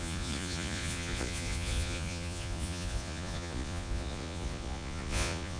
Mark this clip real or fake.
fake